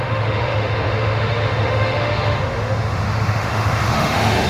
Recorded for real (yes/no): no